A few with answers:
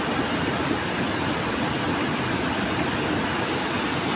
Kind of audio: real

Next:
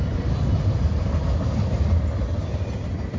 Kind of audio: real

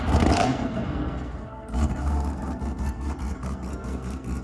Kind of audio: fake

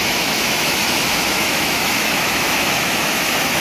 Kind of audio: fake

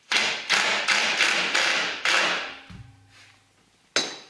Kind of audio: real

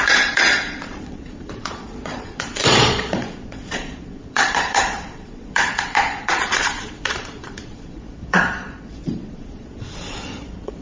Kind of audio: fake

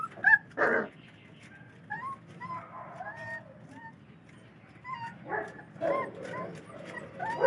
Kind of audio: real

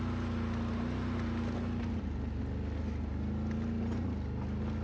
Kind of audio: real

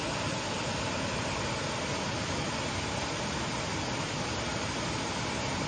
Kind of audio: real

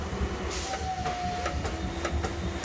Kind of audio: real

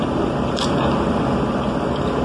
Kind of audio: fake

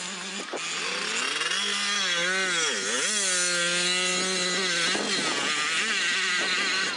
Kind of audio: real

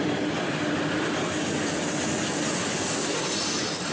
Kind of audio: real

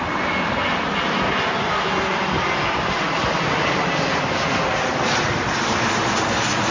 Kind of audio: real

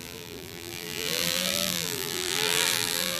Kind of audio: fake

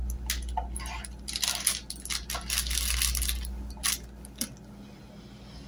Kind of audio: real